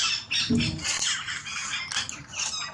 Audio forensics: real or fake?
real